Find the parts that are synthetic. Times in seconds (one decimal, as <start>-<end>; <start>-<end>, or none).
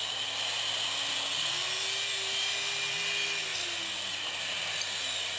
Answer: none